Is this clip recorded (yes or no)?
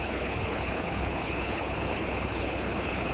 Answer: no